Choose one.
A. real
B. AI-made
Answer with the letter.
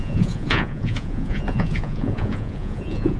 B